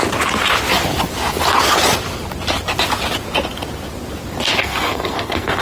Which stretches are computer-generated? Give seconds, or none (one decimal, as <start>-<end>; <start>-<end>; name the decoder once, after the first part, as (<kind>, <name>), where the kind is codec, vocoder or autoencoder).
4.6-5.6 (codec, SNAC)